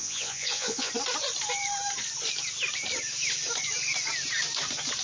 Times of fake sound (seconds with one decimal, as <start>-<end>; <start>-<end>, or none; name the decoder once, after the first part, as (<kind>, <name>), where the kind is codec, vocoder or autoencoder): 0.0-0.9 (vocoder, Vocos)

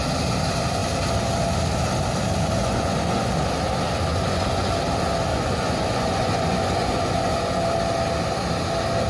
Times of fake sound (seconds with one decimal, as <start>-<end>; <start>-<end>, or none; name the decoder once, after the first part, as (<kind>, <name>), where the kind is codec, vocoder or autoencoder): 2.6-3.3 (vocoder, Vocos); 4.1-4.7; 5.3-7.6